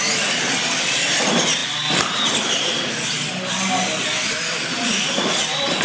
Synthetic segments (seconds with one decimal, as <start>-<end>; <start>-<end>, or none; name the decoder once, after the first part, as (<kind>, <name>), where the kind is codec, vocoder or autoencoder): none